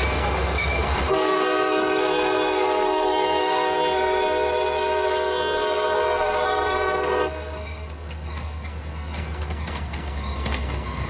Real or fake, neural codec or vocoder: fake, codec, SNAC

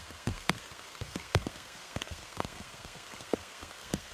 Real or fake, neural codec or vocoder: fake, codec, SNAC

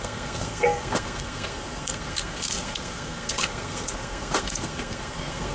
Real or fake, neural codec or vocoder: fake, codec, SNAC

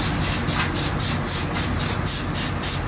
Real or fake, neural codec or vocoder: real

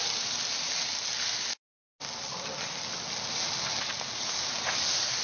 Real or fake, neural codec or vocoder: real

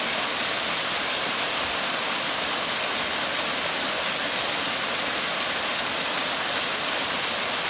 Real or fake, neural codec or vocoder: real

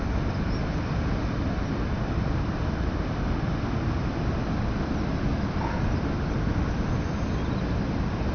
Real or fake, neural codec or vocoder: real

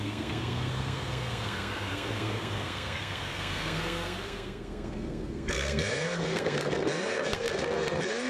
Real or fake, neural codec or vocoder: fake, codec, SNAC